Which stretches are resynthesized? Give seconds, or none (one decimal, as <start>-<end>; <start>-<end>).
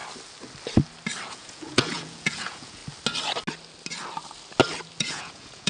1.3-2.8; 5.0-5.7